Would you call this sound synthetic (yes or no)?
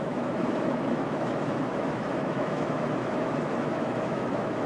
yes